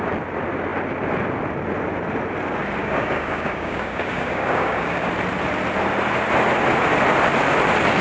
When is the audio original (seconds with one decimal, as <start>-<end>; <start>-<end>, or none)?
0.0-2.8; 5.1-8.0